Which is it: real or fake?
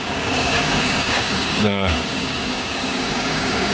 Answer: fake